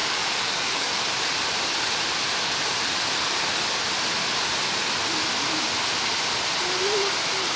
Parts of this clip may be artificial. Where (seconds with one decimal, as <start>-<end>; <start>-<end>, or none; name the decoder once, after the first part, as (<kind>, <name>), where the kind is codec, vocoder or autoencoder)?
0.0-1.0 (codec, DAC)